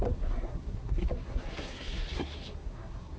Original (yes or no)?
no